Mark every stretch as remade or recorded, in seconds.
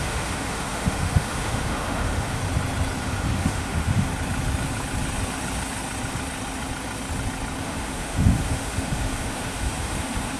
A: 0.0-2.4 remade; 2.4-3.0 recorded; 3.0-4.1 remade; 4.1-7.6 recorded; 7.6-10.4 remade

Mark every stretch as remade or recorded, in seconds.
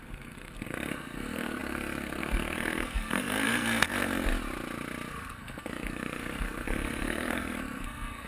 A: 0.0-4.3 remade; 4.3-5.1 recorded; 5.1-8.3 remade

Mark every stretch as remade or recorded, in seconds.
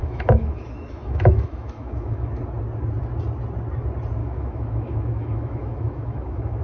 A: 0.0-2.4 remade; 2.4-4.2 recorded; 4.2-6.6 remade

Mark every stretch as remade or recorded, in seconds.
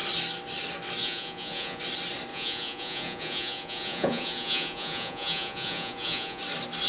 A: 0.0-1.0 recorded; 1.0-1.8 remade; 1.8-2.3 recorded; 2.3-6.4 remade; 6.4-6.9 recorded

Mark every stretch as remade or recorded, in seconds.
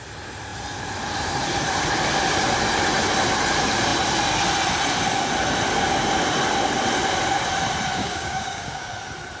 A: 0.0-8.0 recorded; 8.0-8.9 remade; 8.9-9.4 recorded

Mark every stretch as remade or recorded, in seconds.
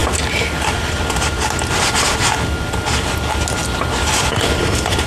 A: 0.0-5.1 recorded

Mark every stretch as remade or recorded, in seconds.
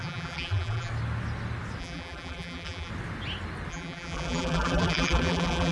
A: 0.0-0.9 remade; 0.9-1.8 recorded; 1.8-2.9 remade; 2.9-3.7 recorded; 3.7-5.7 remade